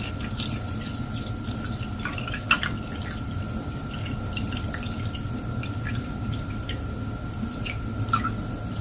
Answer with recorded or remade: recorded